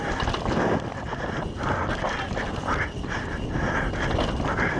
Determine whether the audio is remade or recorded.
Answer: recorded